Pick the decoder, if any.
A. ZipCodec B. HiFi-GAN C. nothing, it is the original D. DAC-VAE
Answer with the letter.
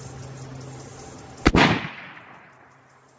C